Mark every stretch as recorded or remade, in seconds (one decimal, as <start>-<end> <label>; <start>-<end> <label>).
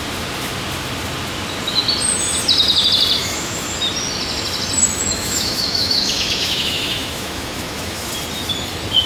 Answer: 0.0-3.2 recorded; 3.2-3.8 remade; 3.8-5.0 recorded; 5.0-8.1 remade; 8.1-9.1 recorded